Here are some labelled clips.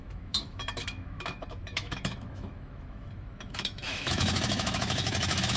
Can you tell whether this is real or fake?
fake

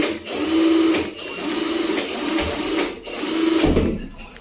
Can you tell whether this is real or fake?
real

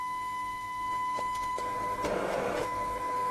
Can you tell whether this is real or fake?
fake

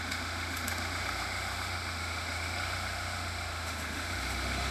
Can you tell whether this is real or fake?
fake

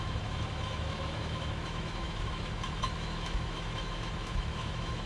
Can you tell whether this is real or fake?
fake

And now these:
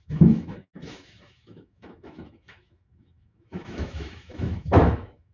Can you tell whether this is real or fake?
fake